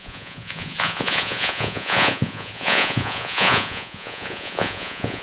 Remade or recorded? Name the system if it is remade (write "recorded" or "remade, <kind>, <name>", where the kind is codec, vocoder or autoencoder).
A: remade, vocoder, Vocos